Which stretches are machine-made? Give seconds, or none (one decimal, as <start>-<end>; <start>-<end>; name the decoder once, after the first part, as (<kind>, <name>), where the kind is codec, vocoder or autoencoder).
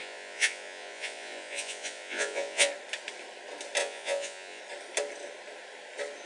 0.0-2.7 (vocoder, Vocos); 3.8-4.6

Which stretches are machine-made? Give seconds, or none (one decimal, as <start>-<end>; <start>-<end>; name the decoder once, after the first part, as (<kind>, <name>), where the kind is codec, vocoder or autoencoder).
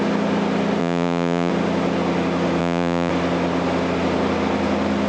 0.8-1.5 (vocoder, Vocos); 2.6-3.1